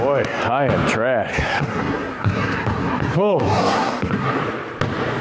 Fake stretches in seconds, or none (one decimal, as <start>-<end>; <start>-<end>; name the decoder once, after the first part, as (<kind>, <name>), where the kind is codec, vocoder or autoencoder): 1.3-4.4 (codec, SNAC)